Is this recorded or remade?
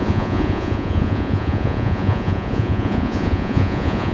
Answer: remade